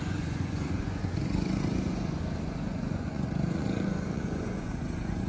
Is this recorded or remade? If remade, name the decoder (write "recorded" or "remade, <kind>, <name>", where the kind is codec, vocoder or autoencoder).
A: remade, vocoder, Vocos